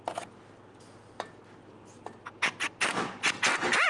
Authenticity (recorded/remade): recorded